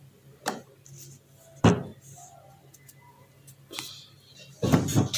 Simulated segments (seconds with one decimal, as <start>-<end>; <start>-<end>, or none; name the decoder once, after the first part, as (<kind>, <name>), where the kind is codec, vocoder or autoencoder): none